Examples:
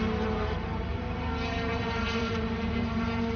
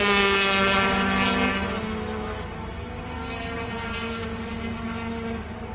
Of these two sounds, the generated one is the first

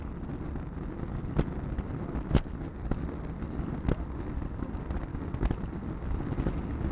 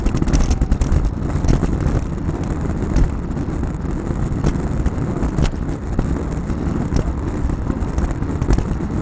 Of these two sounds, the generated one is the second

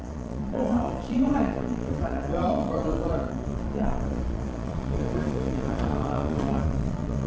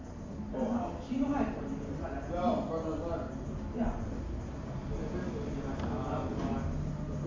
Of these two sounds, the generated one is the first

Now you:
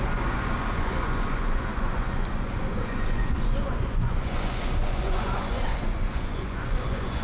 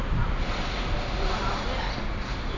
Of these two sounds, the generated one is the first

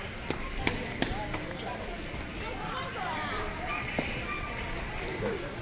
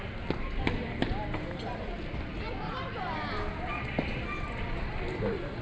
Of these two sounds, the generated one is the first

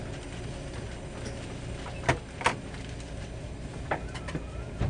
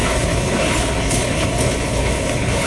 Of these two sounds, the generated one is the second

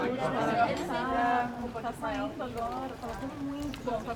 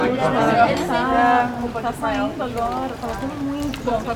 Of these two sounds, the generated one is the first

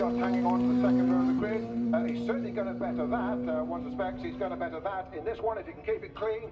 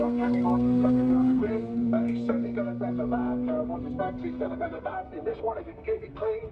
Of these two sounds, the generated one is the second